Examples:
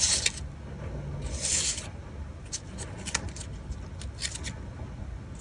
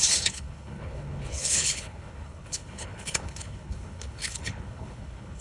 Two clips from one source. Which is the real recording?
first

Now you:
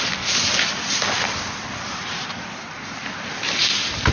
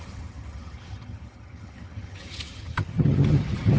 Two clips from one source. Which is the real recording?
first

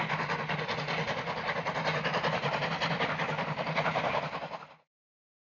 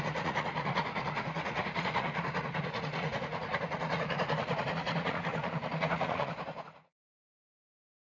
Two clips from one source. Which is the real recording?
first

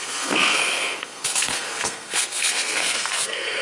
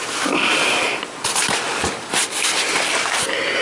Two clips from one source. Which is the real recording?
second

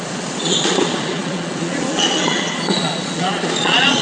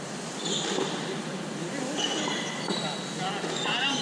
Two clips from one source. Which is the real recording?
second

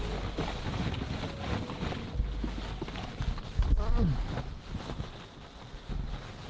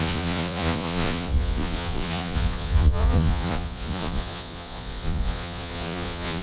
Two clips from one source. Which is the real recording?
first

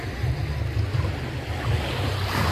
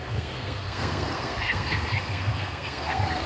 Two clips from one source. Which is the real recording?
first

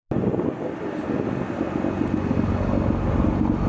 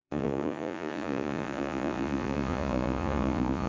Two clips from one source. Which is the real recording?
first